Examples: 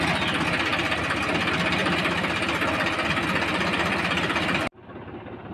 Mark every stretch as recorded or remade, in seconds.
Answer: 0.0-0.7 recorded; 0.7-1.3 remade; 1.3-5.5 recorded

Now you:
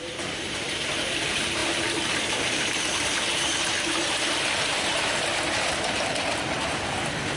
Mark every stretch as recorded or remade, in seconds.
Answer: 0.0-7.4 remade

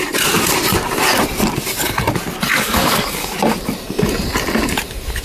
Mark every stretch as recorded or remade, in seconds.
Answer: 0.0-2.5 recorded; 2.5-3.3 remade; 3.3-5.2 recorded

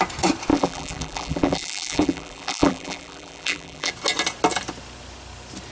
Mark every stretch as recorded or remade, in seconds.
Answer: 0.0-0.5 recorded; 0.5-3.9 remade; 3.9-5.7 recorded

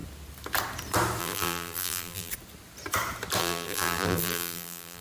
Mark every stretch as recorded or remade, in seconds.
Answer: 0.0-1.2 recorded; 1.2-2.3 remade; 2.3-3.4 recorded; 3.4-5.0 remade

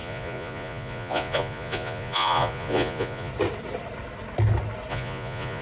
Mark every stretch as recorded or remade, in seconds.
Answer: 0.0-3.3 remade; 3.3-4.9 recorded; 4.9-5.6 remade

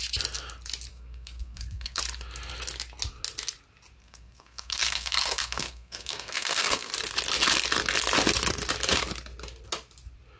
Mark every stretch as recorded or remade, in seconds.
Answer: 0.0-0.9 recorded; 0.9-2.0 remade; 2.0-4.0 recorded; 4.0-6.9 remade; 6.9-10.4 recorded